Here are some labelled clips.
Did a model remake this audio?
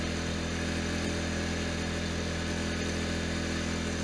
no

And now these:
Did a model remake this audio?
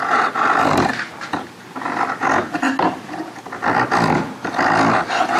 no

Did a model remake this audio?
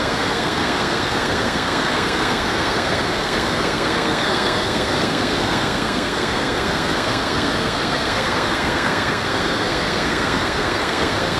yes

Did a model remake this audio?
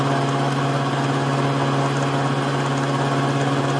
no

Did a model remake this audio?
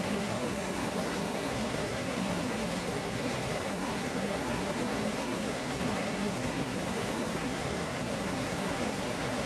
yes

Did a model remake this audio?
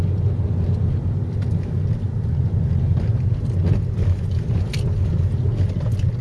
no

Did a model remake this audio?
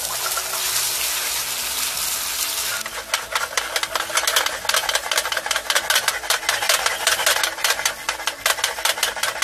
no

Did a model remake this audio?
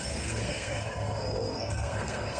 yes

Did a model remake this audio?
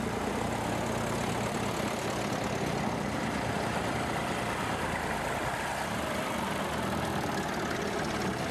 no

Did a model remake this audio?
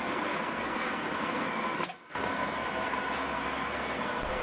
yes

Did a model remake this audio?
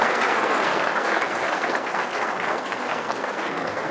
yes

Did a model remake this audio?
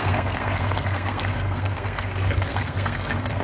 yes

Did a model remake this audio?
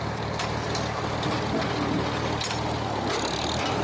no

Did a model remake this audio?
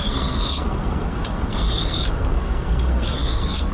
yes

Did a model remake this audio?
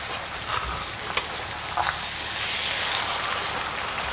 no